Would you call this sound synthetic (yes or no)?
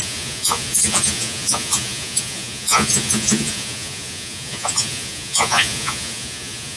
yes